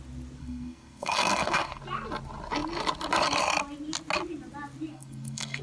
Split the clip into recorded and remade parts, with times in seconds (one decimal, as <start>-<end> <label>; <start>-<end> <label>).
0.0-0.4 recorded; 0.4-1.8 remade; 1.8-4.9 recorded; 4.9-5.6 remade